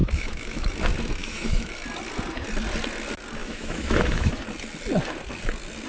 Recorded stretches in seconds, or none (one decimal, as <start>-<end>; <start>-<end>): 0.7-1.2; 1.7-3.4; 4.4-5.9